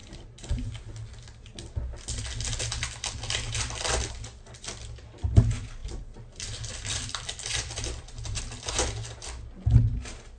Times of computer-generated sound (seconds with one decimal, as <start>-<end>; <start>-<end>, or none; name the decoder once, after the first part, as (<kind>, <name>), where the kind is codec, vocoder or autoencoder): 5.8-8.4 (vocoder, BigVGAN v2)